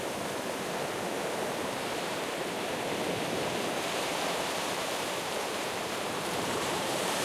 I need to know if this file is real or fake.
fake